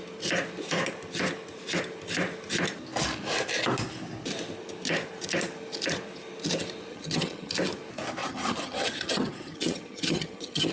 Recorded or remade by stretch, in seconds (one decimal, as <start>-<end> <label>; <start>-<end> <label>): 0.0-6.9 recorded; 6.9-7.5 remade; 7.5-8.2 recorded; 8.2-10.7 remade